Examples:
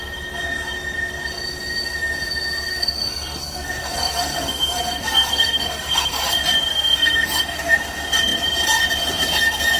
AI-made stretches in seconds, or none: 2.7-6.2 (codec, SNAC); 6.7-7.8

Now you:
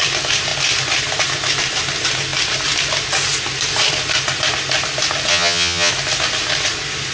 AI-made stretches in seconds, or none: 5.3-5.9 (vocoder, HiFi-GAN)

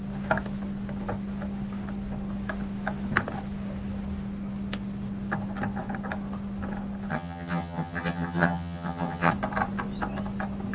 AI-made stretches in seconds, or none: 7.1-9.3 (vocoder, HiFi-GAN)

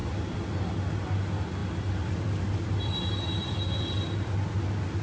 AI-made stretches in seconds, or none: 0.0-0.7 (vocoder, BigVGAN v2); 1.6-4.6

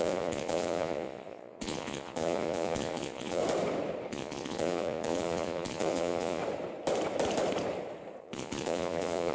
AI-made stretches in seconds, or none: 0.0-3.4 (vocoder, Vocos); 4.1-6.4; 8.2-9.3

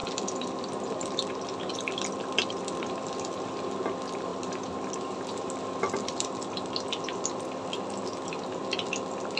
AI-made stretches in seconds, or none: 4.3-5.6 (vocoder, BigVGAN v2)

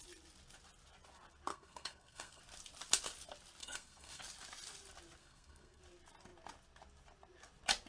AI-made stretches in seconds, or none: 1.5-2.4 (codec, SNAC); 3.6-4.2; 5.2-5.8

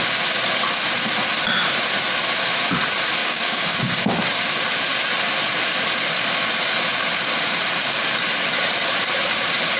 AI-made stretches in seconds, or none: 3.2-4.2 (codec, DAC)